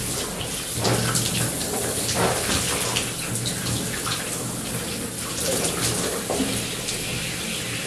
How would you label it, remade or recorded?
recorded